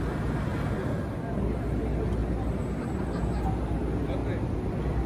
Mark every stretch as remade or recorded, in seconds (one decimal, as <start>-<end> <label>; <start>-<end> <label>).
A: 0.0-4.2 recorded; 4.2-5.1 remade

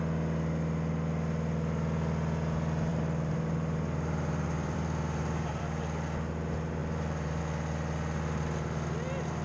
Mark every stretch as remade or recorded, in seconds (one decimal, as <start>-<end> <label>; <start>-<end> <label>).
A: 0.0-2.9 recorded; 2.9-5.6 remade; 5.6-6.8 recorded; 6.8-7.4 remade; 7.4-9.4 recorded

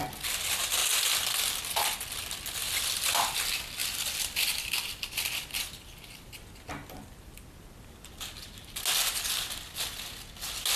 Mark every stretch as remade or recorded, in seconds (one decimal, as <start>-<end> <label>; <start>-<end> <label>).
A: 0.0-2.6 recorded; 2.6-3.4 remade; 3.4-3.8 recorded; 3.8-5.4 remade; 5.4-10.8 recorded

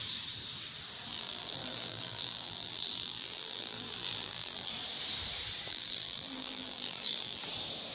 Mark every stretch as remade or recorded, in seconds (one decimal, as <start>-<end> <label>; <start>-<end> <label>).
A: 0.0-1.1 recorded; 1.1-4.7 remade; 4.7-5.7 recorded; 5.7-7.4 remade; 7.4-7.9 recorded

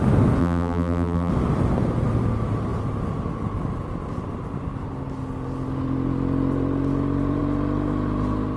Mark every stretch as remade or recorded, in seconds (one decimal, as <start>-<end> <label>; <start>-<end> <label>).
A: 0.0-0.4 recorded; 0.4-1.3 remade; 1.3-8.6 recorded

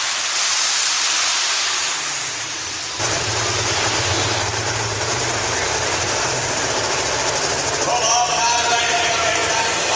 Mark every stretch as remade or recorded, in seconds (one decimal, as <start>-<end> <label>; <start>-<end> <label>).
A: 0.0-7.8 remade; 7.8-8.8 recorded; 8.8-10.0 remade

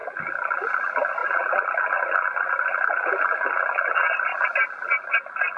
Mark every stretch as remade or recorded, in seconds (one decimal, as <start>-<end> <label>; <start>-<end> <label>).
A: 0.0-1.2 remade; 1.2-3.9 recorded; 3.9-4.3 remade; 4.3-5.1 recorded; 5.1-5.6 remade

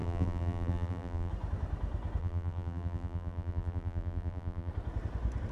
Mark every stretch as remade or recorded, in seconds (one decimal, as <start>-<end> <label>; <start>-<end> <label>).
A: 0.0-1.3 remade; 1.3-2.2 recorded; 2.2-4.7 remade; 4.7-5.5 recorded